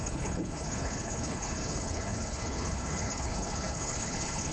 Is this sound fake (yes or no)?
yes